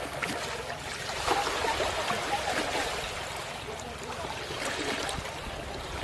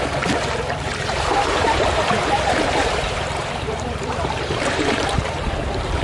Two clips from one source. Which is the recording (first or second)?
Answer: first